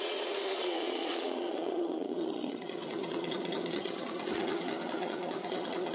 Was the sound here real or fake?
fake